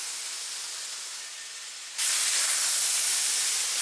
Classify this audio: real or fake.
real